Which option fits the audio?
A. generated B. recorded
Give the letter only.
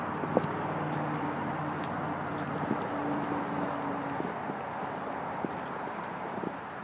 B